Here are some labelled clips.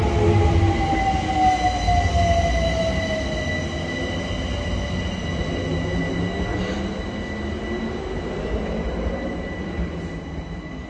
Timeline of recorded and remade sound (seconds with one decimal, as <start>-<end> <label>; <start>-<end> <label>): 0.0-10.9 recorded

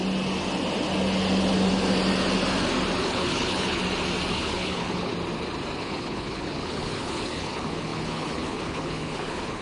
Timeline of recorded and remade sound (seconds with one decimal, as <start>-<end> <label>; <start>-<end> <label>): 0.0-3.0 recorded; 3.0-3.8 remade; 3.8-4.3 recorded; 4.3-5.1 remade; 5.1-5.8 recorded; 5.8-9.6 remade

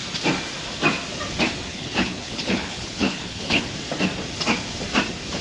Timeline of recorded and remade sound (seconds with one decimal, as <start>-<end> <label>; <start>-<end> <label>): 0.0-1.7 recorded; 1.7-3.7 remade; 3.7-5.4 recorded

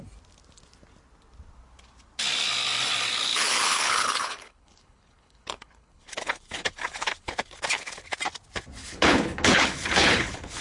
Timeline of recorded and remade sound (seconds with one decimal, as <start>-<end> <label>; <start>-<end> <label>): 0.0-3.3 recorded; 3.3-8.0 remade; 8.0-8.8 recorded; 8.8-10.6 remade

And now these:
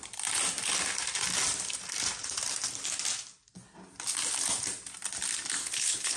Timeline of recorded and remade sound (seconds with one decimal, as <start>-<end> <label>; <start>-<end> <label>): 0.0-5.6 recorded; 5.6-6.2 remade

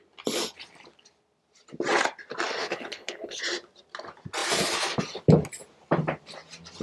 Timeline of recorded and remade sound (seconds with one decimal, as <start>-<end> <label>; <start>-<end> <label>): 0.0-2.6 recorded; 2.6-3.4 remade; 3.4-6.8 recorded